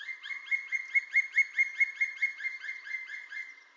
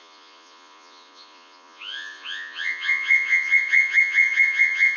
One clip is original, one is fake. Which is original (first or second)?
first